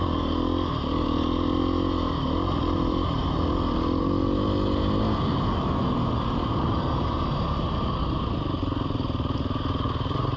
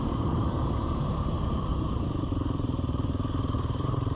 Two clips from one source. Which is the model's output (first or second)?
second